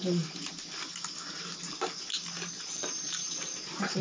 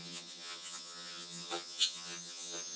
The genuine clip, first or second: first